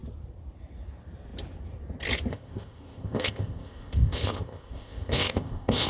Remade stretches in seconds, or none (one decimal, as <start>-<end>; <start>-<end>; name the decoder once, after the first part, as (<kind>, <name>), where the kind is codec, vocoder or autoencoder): 2.3-5.9 (codec, ZipCodec)